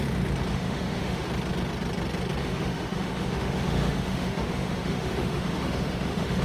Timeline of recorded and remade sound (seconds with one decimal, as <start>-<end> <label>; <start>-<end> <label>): 0.0-0.5 recorded; 0.5-1.3 remade; 1.3-2.4 recorded; 2.4-6.4 remade